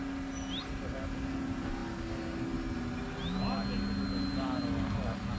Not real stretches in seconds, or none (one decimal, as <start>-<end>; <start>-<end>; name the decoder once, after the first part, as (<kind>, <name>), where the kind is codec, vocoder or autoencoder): none